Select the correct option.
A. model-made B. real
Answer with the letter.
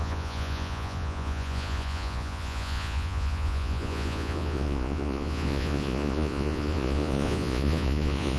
A